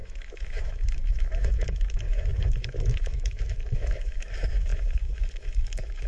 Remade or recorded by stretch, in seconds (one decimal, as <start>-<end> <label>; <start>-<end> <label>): 0.0-6.1 remade